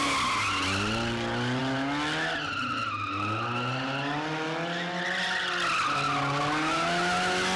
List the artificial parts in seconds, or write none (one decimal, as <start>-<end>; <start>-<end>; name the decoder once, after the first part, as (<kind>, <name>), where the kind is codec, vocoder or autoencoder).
none